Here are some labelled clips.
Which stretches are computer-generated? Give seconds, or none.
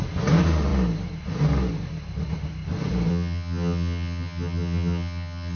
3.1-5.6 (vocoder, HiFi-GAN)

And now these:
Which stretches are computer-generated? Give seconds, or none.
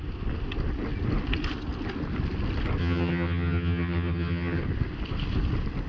2.8-4.6 (vocoder, HiFi-GAN)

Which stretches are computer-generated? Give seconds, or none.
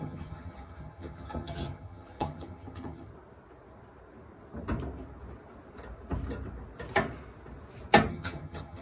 0.0-3.1 (vocoder, HiFi-GAN); 8.1-8.8